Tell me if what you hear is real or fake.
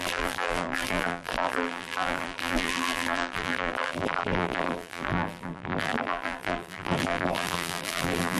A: fake